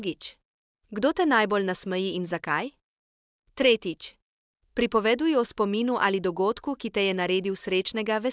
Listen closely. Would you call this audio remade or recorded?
recorded